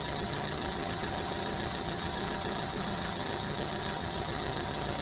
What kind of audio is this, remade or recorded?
remade